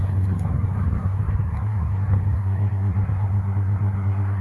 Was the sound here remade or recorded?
remade